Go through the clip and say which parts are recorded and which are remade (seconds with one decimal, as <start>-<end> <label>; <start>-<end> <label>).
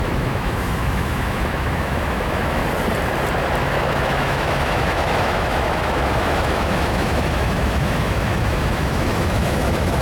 0.0-2.6 remade; 2.6-3.6 recorded; 3.6-10.0 remade